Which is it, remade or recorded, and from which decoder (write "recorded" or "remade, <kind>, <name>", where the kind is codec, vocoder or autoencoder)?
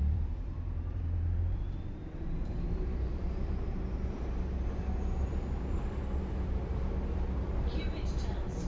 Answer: remade, vocoder, BigVGAN v2